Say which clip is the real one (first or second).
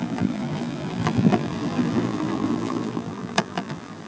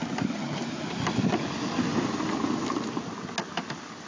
second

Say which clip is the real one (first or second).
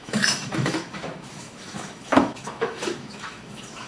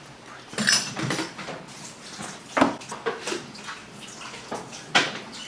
second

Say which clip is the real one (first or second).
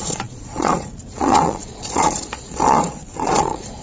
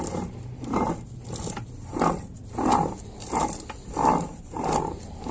second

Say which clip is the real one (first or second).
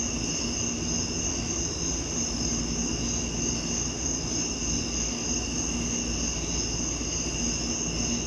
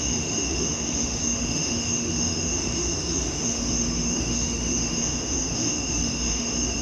first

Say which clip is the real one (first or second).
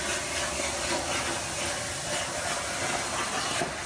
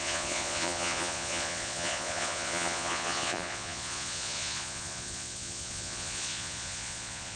first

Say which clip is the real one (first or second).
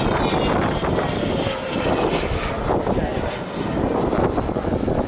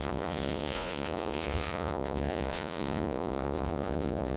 first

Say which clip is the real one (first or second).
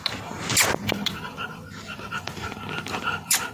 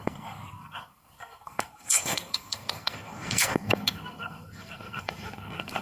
first